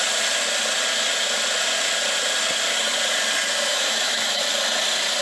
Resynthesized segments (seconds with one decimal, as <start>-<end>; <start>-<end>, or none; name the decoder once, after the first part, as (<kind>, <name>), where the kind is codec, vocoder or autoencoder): 3.7-4.4 (autoencoder, DAC-VAE)